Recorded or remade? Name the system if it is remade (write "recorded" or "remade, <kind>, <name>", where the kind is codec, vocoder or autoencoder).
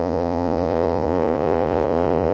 remade, vocoder, Vocos